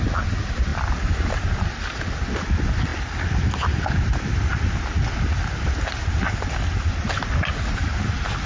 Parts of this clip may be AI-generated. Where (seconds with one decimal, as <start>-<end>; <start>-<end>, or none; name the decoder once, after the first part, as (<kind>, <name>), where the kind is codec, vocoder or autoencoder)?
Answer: none

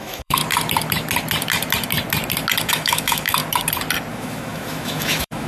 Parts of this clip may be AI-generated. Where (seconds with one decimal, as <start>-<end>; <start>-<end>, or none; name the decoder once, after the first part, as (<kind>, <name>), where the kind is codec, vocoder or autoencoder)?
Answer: 0.0-0.4 (autoencoder, DAC-VAE); 2.7-3.4; 4.1-5.5